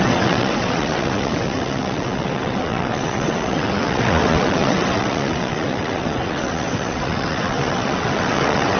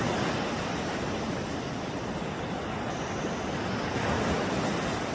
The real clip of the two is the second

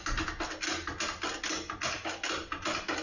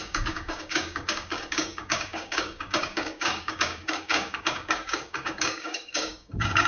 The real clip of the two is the first